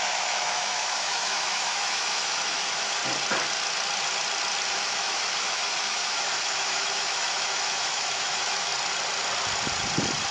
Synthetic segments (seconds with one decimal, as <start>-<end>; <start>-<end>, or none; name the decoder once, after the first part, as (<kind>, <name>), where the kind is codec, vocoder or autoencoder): 0.0-3.0 (autoencoder, DAC-VAE); 4.7-8.7